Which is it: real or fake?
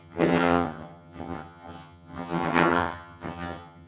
fake